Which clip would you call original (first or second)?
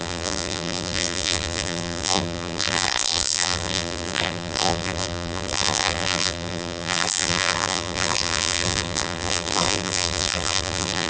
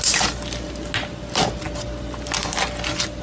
second